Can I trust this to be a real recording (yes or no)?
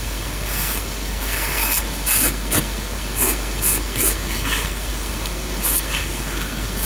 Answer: no